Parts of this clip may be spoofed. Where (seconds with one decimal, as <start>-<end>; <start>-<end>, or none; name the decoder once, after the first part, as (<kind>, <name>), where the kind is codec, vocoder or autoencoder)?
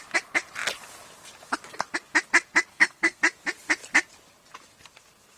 2.7-3.2 (codec, SNAC)